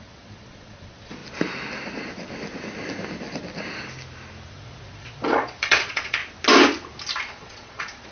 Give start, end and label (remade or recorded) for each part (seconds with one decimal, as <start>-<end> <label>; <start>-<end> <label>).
0.0-1.2 remade; 1.2-4.5 recorded; 4.5-6.2 remade; 6.2-7.3 recorded; 7.3-8.1 remade